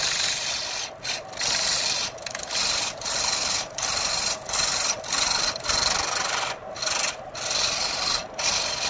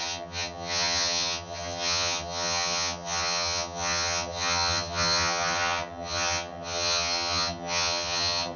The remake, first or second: second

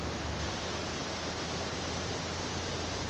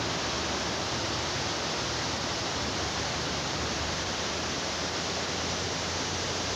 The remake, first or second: second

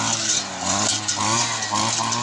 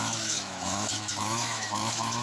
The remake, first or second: second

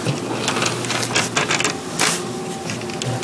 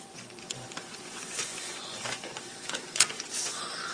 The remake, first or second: second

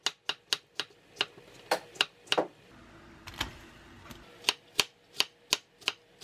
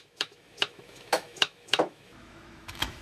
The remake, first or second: second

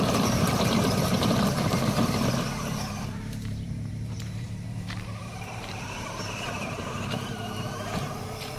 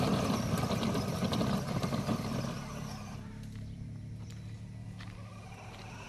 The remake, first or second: first